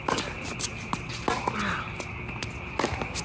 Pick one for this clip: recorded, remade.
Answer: recorded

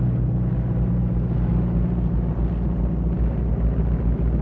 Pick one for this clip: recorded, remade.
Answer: recorded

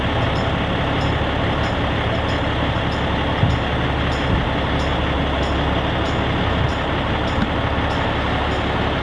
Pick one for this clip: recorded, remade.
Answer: recorded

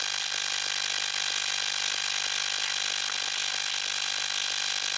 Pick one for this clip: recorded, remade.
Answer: recorded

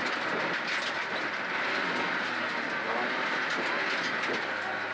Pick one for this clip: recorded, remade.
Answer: recorded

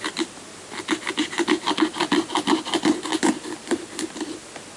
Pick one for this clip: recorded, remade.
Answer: recorded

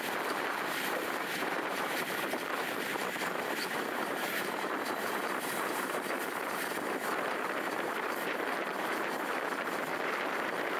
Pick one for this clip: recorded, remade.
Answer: remade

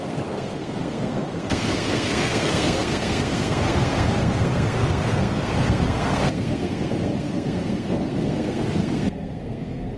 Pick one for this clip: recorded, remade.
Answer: remade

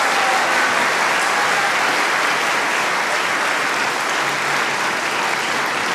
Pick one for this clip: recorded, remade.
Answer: recorded